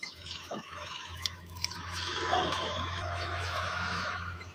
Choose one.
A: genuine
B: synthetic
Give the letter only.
B